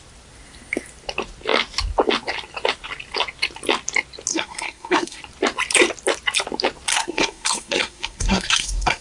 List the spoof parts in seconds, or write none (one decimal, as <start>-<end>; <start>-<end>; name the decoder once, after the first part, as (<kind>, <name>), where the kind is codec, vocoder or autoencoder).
4.3-5.2 (codec, SNAC); 6.9-9.0